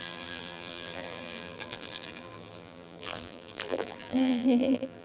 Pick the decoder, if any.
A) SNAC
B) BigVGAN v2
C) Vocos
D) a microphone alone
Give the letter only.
B